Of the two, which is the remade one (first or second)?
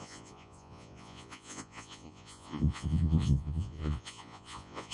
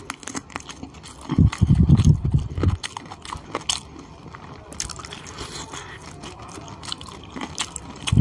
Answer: first